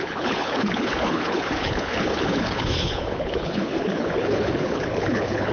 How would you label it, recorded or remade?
remade